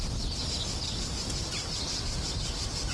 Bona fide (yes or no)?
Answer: yes